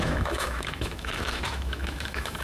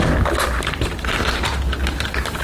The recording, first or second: second